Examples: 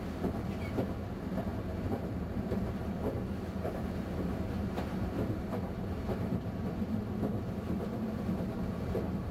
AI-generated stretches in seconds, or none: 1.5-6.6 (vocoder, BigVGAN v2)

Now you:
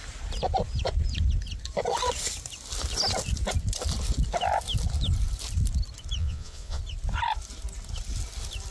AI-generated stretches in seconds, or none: 6.2-6.8 (vocoder, Vocos)

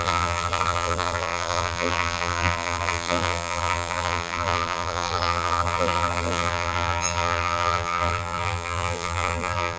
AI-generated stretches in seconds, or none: 0.0-9.8 (vocoder, BigVGAN v2)

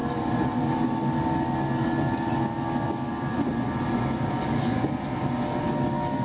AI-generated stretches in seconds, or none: 0.0-0.8 (vocoder, BigVGAN v2)

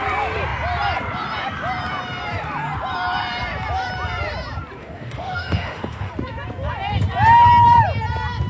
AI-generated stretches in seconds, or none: 4.8-6.1 (autoencoder, DAC-VAE)

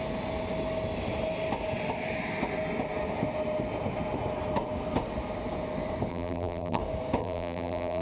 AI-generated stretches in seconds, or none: 6.1-6.8 (vocoder, BigVGAN v2); 7.2-8.0

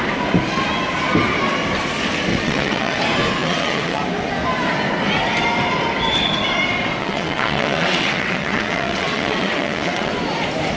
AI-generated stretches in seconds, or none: 2.3-3.0 (vocoder, WaveNeXt); 3.4-4.0; 7.0-10.1

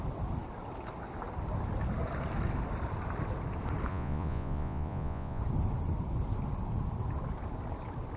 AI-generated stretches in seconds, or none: 3.9-5.4 (vocoder, Vocos)